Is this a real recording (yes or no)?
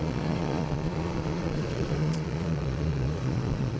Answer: no